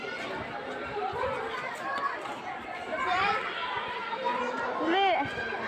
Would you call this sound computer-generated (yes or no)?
yes